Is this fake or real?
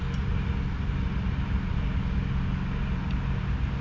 real